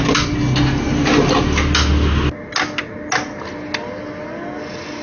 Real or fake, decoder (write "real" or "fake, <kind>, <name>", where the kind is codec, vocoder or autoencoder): real